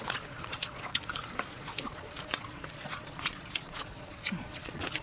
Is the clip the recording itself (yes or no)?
no